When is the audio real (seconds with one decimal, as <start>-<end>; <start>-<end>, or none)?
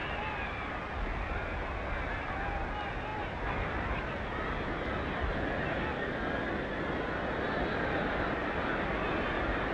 0.0-9.7